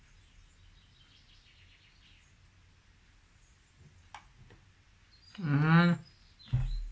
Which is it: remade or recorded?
recorded